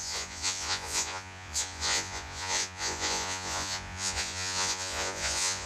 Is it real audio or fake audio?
fake